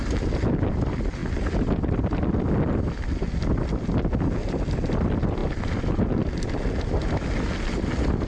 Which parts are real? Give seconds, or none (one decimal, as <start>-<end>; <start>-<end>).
0.0-8.3